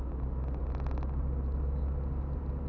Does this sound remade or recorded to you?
recorded